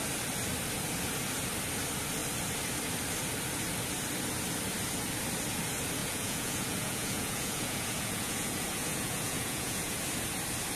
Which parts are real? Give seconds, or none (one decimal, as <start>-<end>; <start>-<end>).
0.0-6.0; 10.0-10.8